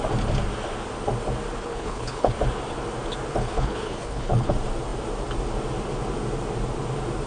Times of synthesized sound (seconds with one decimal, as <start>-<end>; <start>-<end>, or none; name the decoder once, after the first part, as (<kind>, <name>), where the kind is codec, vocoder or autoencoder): 1.6-2.3 (codec, HILCodec); 3.4-4.5

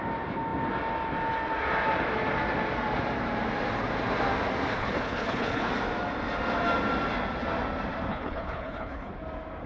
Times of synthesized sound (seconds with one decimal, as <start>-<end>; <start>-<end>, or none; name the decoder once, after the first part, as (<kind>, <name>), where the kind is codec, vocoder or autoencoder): 4.8-5.7 (codec, HILCodec); 8.1-9.1